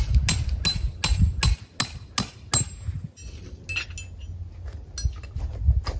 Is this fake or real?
real